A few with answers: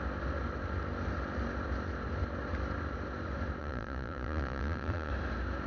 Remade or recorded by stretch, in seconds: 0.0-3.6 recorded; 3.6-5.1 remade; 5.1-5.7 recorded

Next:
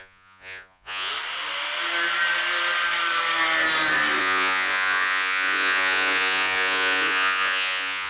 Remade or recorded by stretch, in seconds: 0.0-1.1 remade; 1.1-4.2 recorded; 4.2-8.1 remade

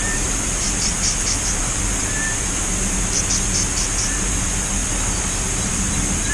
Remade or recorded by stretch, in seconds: 0.0-6.3 recorded

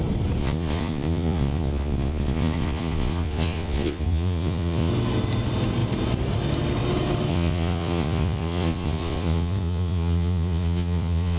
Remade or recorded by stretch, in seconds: 0.0-0.4 recorded; 0.4-4.9 remade; 4.9-7.3 recorded; 7.3-11.4 remade

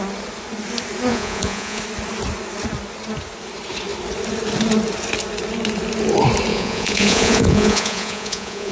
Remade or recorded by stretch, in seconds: 0.0-1.1 recorded; 1.1-1.8 remade; 1.8-6.5 recorded; 6.5-8.7 remade